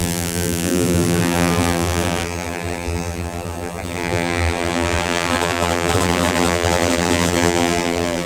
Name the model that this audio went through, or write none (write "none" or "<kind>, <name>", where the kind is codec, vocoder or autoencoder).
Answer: vocoder, BigVGAN v2